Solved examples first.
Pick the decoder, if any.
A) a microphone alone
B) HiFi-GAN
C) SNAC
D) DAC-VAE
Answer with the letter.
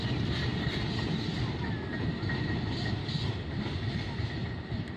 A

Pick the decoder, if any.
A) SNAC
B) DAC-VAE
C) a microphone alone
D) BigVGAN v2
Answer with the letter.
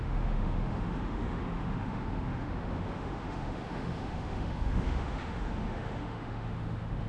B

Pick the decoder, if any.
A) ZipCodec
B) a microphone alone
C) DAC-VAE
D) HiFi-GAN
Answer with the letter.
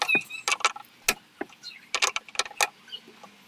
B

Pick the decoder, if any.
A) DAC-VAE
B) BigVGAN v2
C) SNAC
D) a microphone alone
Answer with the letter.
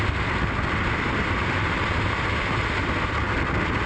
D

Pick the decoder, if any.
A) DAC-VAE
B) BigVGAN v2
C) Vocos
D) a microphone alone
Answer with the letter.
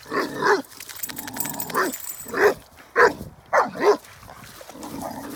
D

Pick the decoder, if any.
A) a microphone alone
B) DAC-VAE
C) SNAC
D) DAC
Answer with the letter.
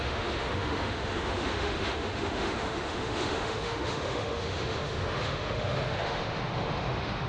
B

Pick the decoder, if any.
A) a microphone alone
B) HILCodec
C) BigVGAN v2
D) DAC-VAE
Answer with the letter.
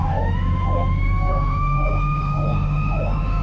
D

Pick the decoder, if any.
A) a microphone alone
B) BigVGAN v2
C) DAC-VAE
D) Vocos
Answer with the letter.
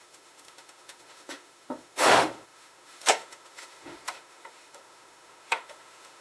C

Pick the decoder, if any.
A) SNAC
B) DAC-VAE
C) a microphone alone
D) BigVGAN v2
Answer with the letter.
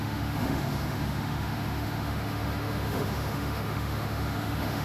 B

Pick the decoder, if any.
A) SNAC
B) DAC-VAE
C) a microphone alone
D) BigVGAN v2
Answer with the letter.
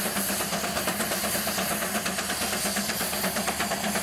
C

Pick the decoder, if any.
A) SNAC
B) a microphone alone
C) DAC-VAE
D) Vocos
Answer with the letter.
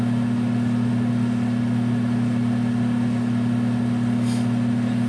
B